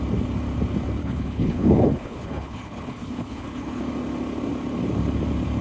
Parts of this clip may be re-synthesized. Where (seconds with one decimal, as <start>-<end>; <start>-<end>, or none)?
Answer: 1.0-3.8